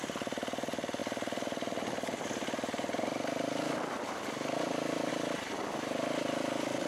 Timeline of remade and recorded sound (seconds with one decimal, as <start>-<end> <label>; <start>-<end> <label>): 0.0-6.9 recorded